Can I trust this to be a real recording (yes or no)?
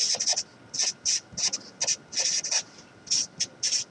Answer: yes